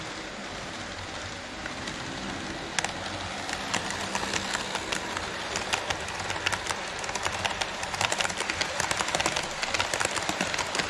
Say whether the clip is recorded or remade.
recorded